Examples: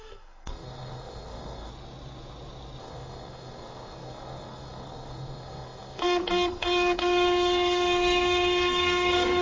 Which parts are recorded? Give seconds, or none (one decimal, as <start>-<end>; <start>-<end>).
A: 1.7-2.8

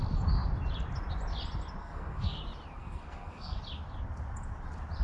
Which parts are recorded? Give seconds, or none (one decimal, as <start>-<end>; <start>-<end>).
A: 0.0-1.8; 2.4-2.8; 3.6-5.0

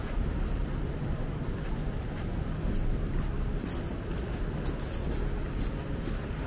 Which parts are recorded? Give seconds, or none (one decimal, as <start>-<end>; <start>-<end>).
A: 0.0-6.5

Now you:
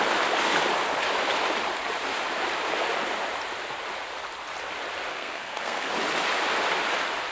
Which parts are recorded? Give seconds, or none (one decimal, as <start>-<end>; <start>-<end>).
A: 0.0-5.1; 5.9-7.3

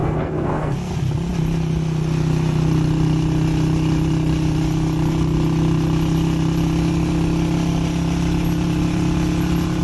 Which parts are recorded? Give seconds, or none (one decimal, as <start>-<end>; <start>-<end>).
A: 0.9-9.8